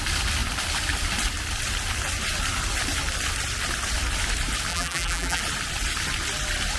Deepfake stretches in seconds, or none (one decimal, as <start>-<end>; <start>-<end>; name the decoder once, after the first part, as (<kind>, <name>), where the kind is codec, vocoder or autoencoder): 4.7-5.4 (vocoder, BigVGAN v2)